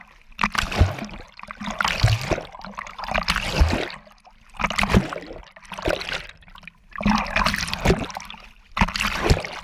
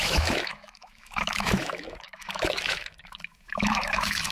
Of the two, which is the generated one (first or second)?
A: second